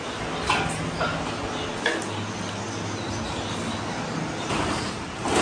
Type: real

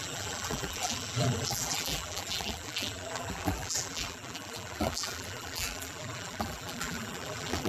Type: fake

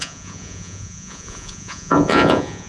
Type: fake